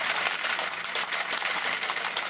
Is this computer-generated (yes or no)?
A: yes